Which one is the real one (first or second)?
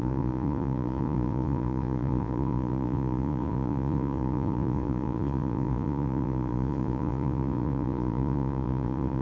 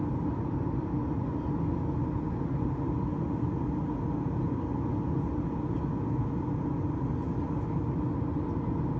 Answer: second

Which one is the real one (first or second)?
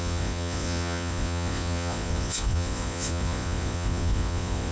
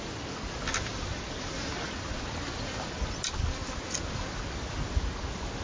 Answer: second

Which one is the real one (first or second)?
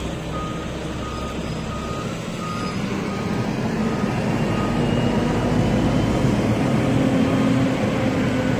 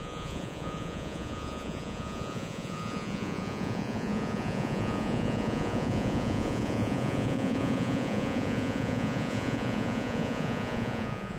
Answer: first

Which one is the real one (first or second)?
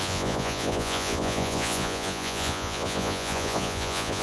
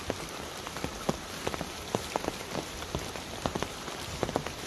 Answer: second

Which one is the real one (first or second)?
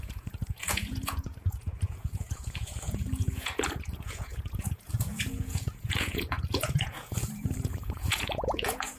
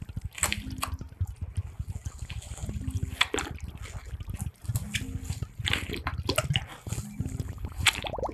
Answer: second